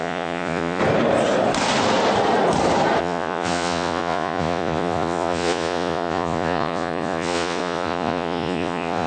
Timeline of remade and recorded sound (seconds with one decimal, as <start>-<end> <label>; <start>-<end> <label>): 0.0-0.8 remade; 0.8-3.0 recorded; 3.0-9.1 remade